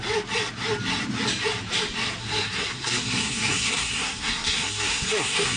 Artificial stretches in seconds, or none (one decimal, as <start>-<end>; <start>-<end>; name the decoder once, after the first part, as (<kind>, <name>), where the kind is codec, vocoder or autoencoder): 2.2-5.6 (codec, SNAC)